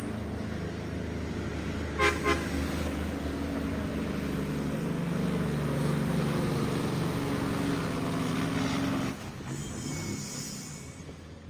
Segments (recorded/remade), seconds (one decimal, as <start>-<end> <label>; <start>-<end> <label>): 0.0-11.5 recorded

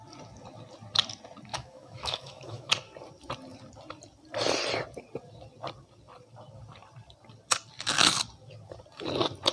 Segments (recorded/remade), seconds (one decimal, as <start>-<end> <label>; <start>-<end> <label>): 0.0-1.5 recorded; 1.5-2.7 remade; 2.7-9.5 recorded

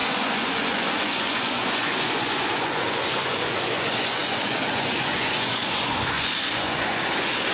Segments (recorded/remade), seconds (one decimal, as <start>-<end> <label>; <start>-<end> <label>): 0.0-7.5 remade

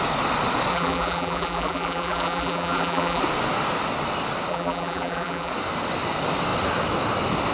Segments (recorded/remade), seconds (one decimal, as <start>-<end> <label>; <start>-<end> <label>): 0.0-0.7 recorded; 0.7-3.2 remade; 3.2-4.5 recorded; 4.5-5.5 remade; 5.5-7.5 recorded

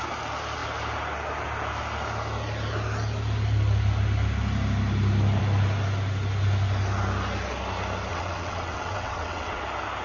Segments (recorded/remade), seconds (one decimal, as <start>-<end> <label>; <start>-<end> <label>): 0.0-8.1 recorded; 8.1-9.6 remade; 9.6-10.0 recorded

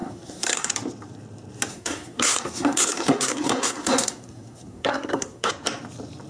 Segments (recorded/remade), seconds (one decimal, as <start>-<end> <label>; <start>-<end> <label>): 0.0-0.7 remade; 0.7-1.7 recorded; 1.7-5.5 remade; 5.5-6.3 recorded

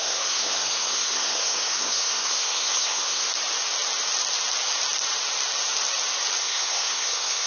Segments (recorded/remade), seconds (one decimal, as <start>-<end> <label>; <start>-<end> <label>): 0.0-3.3 remade; 3.3-6.4 recorded; 6.4-7.5 remade

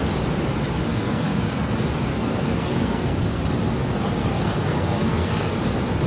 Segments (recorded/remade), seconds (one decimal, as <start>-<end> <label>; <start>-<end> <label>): 0.0-0.9 recorded; 0.9-1.7 remade; 1.7-2.1 recorded; 2.1-3.4 remade; 3.4-4.2 recorded; 4.2-5.6 remade; 5.6-6.1 recorded